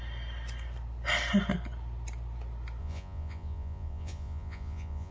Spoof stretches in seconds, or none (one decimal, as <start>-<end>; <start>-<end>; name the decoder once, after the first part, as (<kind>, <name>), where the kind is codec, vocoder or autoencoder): 2.8-5.1 (vocoder, Vocos)